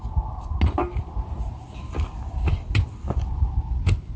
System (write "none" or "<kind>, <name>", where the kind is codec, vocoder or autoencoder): none